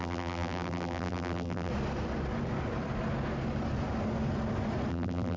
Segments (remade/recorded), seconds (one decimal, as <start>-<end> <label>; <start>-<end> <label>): 0.0-1.7 remade; 1.7-4.9 recorded; 4.9-5.4 remade